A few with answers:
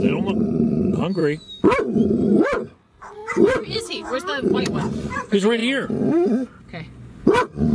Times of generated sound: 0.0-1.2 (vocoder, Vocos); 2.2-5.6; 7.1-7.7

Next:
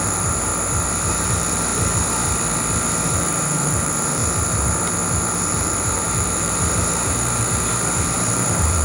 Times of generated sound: 0.0-0.5 (vocoder, BigVGAN v2); 1.1-1.7; 2.9-4.2; 5.4-8.8